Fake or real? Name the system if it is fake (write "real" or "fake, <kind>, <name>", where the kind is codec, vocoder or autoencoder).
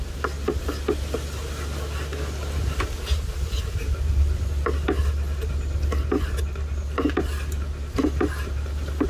real